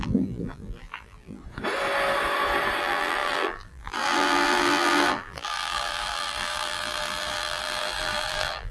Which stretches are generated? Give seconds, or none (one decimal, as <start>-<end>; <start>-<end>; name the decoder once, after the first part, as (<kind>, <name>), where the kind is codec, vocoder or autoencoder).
0.0-1.4 (vocoder, BigVGAN v2); 2.8-8.7